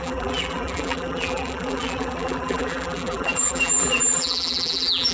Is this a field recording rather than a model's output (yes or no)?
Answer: no